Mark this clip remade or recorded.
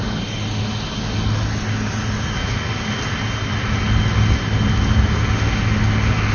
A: recorded